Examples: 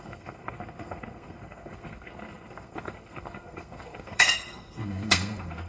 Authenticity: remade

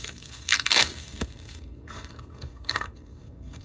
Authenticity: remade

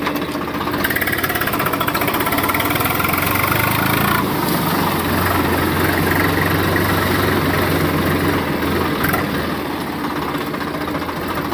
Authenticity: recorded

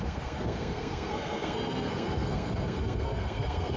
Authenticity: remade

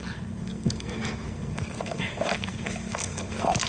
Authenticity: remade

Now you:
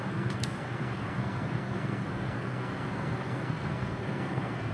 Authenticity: remade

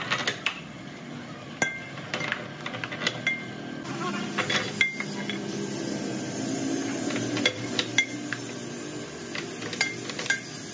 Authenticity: recorded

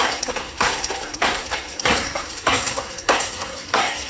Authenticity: remade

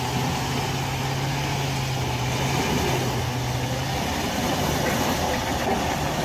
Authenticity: recorded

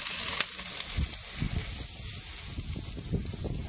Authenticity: recorded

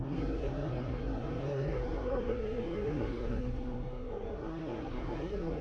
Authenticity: remade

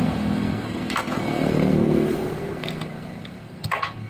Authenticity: remade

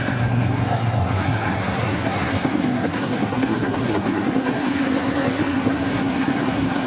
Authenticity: remade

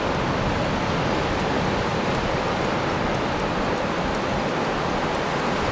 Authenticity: recorded